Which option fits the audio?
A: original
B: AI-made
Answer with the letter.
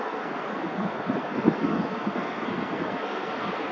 B